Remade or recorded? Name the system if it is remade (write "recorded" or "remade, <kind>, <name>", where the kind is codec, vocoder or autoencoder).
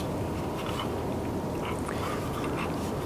remade, vocoder, BigVGAN v2